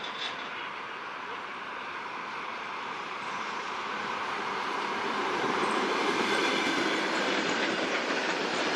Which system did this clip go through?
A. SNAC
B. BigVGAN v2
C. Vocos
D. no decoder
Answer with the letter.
B